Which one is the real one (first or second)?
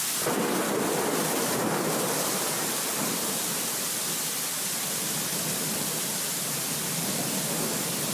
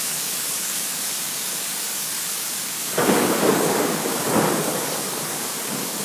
first